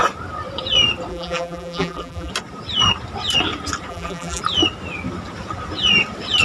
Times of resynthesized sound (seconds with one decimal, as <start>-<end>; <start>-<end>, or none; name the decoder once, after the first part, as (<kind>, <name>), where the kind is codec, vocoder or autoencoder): 1.1-2.3 (vocoder, BigVGAN v2); 3.9-4.4